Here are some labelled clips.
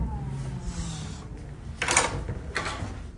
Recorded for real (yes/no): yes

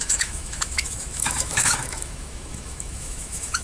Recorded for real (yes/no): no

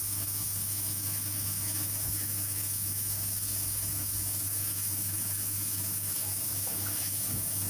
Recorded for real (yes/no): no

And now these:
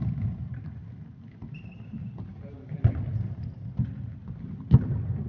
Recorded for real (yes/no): yes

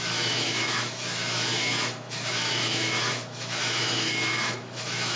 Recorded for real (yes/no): no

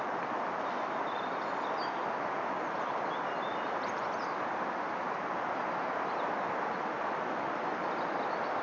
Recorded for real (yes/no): yes